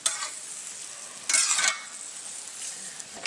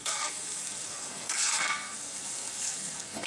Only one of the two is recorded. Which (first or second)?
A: first